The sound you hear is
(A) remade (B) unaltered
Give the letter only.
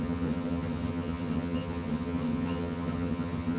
A